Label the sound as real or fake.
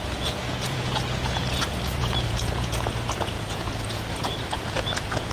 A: fake